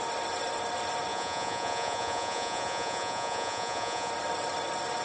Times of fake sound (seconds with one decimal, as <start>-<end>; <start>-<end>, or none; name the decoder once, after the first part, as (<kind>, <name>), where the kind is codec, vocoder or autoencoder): 1.1-4.1 (vocoder, Vocos)